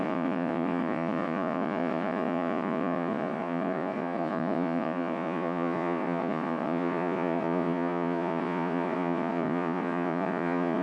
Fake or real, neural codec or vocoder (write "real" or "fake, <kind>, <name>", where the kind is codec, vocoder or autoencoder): fake, vocoder, Vocos